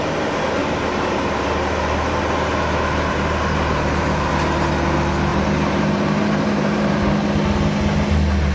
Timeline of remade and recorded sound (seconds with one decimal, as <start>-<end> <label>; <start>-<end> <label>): 0.0-0.6 recorded; 0.6-4.3 remade; 4.3-5.3 recorded; 5.3-7.1 remade; 7.1-8.5 recorded